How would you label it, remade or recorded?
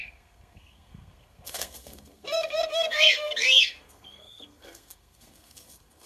remade